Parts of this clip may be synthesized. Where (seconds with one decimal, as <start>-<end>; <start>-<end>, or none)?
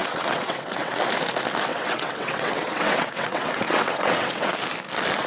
0.0-1.0; 1.7-4.5